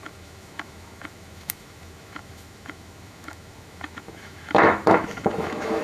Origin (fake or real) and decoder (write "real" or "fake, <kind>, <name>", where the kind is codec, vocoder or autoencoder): fake, autoencoder, DAC-VAE